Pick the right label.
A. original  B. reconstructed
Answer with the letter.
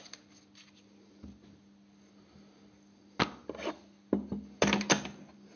A